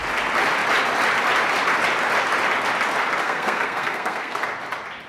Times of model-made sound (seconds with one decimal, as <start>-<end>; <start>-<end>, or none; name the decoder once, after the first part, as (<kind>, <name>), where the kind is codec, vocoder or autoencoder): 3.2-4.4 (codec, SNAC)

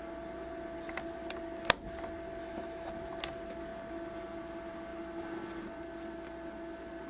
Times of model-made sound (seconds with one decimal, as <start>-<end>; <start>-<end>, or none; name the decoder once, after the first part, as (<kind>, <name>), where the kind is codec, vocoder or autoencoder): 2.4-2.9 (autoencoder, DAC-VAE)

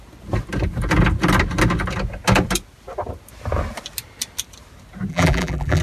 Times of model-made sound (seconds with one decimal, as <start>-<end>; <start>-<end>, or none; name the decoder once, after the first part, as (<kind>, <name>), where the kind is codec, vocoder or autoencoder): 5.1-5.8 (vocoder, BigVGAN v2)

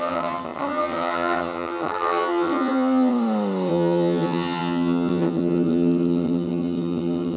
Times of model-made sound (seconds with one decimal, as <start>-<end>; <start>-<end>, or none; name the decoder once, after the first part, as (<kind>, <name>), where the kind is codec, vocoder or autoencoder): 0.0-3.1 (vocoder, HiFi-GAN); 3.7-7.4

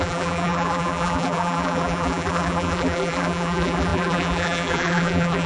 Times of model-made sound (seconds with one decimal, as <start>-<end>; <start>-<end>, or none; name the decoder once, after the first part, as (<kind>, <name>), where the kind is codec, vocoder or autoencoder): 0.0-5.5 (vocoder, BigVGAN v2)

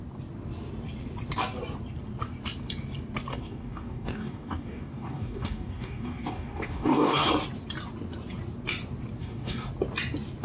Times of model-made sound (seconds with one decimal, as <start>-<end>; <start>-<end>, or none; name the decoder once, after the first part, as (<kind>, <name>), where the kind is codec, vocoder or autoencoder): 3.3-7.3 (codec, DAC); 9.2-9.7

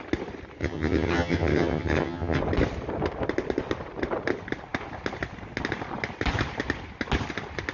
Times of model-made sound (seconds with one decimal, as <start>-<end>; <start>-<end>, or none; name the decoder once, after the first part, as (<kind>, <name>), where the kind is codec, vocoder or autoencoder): 0.6-2.4 (vocoder, HiFi-GAN)

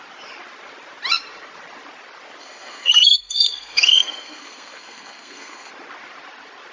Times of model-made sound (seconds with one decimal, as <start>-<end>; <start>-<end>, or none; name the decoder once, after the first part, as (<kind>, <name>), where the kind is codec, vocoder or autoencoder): 2.4-5.7 (codec, SNAC)